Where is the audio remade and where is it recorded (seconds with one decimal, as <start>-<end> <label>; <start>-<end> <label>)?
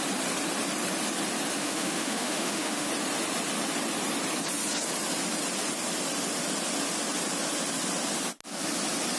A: 0.0-1.6 recorded; 1.6-2.9 remade; 2.9-9.2 recorded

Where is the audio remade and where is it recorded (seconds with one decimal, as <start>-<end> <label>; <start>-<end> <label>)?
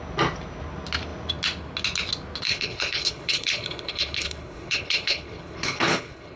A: 0.0-2.5 recorded; 2.5-6.4 remade